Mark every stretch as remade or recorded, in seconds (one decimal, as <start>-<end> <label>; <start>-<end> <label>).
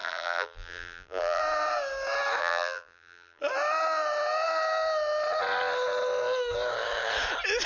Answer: 0.0-1.4 remade; 1.4-2.4 recorded; 2.4-3.4 remade; 3.4-7.7 recorded